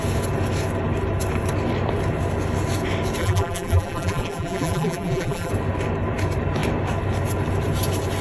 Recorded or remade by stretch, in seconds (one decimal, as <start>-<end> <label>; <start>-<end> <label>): 0.0-3.2 recorded; 3.2-5.5 remade; 5.5-8.2 recorded